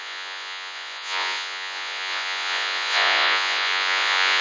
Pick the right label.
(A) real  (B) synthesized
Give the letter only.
B